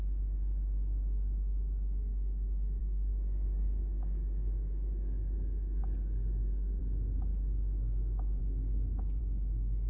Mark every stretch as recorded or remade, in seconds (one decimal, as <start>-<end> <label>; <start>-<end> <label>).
0.0-2.8 recorded; 2.8-6.8 remade; 6.8-8.4 recorded; 8.4-9.2 remade; 9.2-9.9 recorded